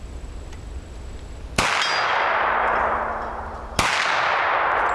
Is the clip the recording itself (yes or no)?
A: yes